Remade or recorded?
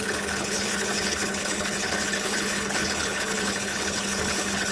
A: remade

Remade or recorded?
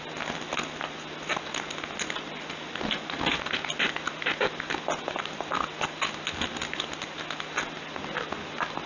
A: recorded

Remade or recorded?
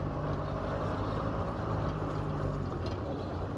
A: recorded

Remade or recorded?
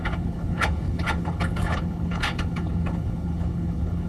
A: remade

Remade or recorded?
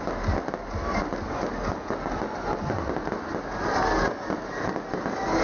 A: recorded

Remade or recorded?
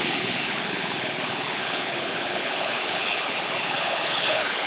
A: remade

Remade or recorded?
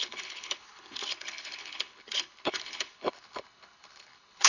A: remade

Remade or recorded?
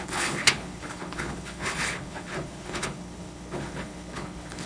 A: remade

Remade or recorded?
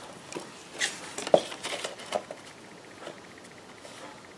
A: recorded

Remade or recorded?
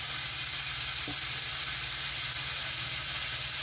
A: recorded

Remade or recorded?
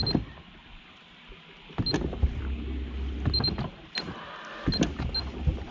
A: recorded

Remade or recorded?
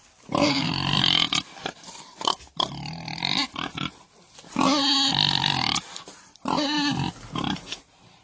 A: recorded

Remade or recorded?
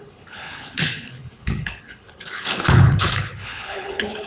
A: remade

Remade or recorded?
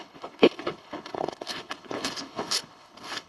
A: remade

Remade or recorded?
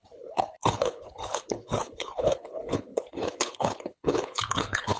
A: remade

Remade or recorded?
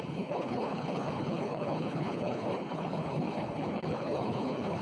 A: remade